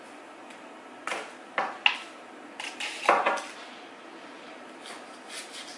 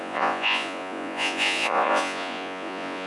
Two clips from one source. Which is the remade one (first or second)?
second